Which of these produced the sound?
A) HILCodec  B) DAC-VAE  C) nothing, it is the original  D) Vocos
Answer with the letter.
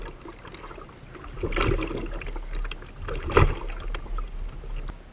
C